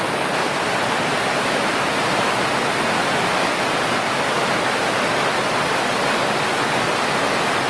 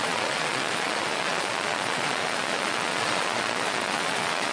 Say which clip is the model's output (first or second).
second